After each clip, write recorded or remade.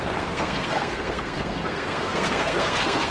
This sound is remade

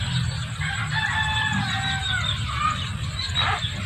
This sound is recorded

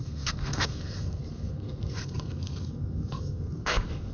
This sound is remade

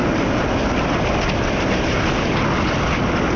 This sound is recorded